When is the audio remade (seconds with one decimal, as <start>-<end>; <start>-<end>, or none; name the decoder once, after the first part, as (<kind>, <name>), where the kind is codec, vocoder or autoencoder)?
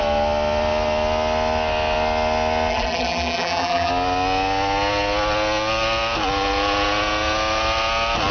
2.7-3.9 (vocoder, BigVGAN v2)